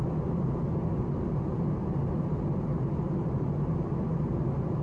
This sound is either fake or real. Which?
real